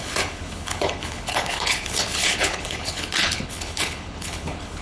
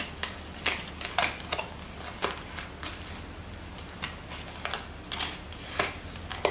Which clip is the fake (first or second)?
first